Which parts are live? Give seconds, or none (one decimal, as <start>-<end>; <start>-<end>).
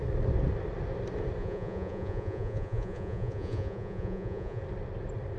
0.0-1.4; 4.6-5.4